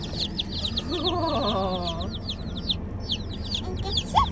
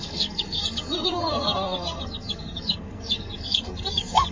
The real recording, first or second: first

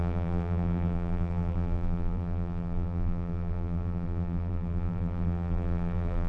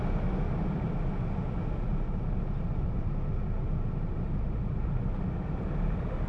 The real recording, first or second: second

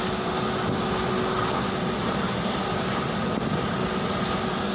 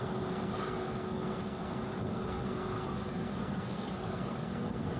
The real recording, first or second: first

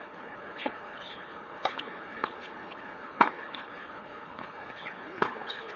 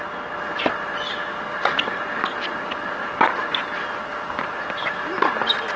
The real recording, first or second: second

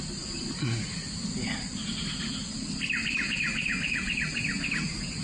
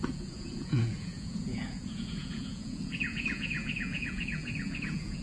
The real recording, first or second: first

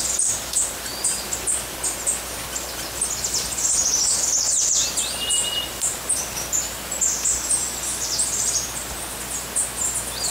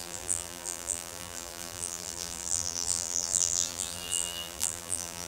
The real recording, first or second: first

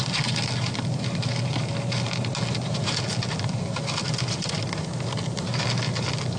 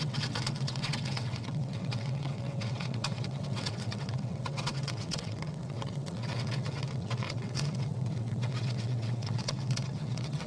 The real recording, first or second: first